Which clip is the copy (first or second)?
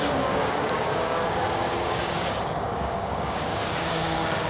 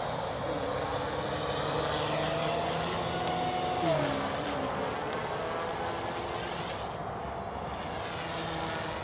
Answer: first